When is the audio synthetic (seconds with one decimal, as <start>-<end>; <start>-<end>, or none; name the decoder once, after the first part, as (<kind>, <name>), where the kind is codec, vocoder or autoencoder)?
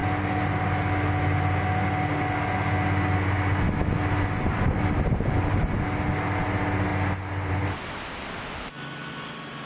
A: none